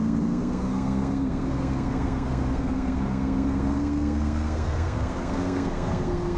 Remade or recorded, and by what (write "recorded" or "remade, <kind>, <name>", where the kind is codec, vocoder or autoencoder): remade, codec, SNAC